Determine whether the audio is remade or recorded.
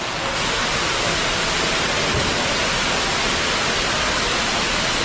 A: recorded